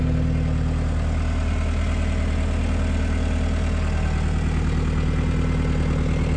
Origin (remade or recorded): recorded